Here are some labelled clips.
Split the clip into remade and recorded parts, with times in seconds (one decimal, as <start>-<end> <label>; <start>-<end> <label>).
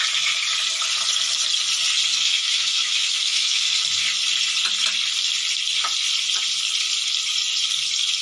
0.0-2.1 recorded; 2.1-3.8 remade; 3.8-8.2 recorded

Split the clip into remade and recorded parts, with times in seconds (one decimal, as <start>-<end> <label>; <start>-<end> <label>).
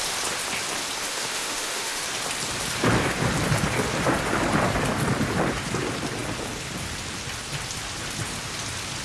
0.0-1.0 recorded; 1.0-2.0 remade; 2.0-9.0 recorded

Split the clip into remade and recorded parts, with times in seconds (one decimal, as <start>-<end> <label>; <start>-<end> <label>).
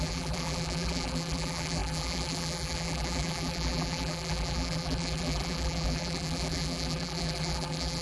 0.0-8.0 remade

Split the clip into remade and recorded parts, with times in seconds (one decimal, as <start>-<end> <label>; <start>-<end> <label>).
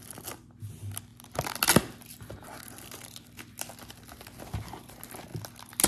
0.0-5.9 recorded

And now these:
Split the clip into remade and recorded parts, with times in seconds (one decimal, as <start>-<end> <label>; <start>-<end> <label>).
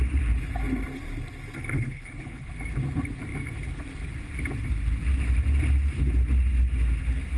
0.0-1.7 recorded; 1.7-2.5 remade; 2.5-7.4 recorded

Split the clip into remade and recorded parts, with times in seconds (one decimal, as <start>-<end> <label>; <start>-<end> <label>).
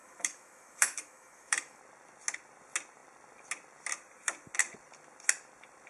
0.0-1.8 remade; 1.8-5.9 recorded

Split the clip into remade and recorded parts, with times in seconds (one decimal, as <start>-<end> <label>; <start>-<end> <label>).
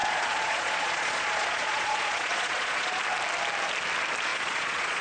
0.0-3.0 remade; 3.0-4.3 recorded; 4.3-5.0 remade